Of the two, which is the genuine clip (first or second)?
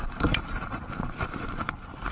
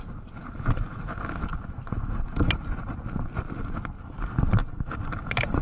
second